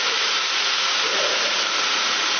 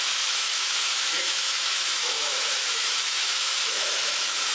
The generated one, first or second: second